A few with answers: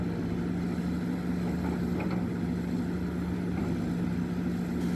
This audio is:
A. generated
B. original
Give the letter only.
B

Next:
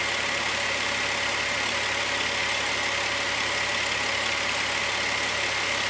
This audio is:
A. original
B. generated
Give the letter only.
A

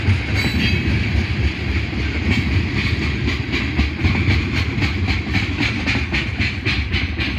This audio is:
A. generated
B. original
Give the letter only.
B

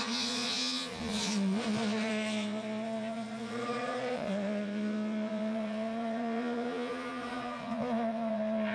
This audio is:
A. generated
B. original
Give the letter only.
A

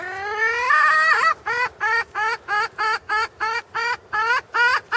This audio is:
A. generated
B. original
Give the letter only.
B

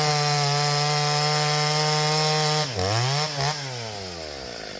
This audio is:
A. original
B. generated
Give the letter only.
A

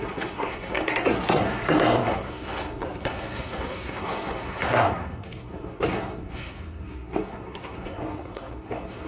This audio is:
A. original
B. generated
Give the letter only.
B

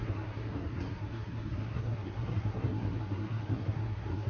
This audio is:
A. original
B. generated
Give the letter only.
B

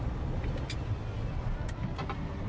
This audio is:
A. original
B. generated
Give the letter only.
A